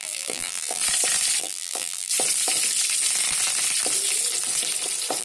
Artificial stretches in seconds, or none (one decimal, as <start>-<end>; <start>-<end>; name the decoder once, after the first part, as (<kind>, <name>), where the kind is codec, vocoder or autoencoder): 0.0-0.8 (vocoder, BigVGAN v2); 1.4-2.1